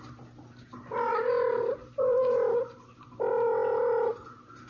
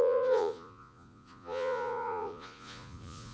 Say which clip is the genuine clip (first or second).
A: first